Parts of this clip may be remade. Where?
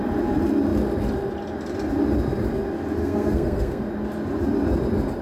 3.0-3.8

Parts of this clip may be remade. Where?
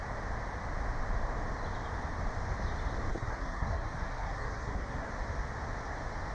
3.1-5.1